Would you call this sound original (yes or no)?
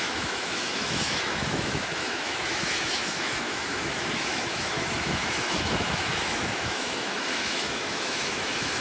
no